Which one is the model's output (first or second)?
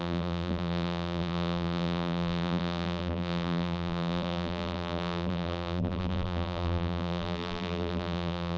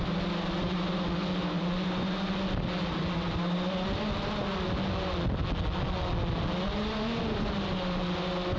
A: first